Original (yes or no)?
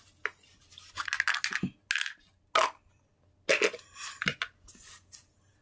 yes